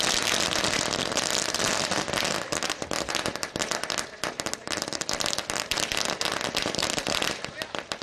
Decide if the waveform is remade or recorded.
remade